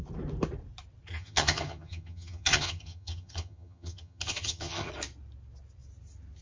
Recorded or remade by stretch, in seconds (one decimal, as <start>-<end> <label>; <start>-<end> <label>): 0.0-1.1 recorded; 1.1-4.9 remade; 4.9-6.4 recorded